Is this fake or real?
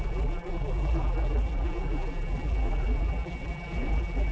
fake